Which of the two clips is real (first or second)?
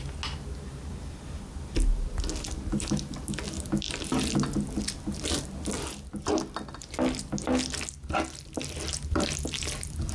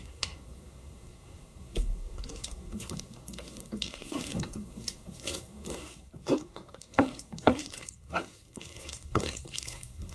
first